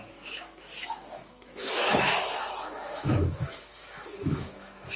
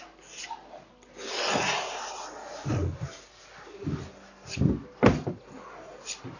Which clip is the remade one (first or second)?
first